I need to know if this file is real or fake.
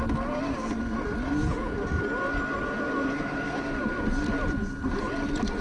real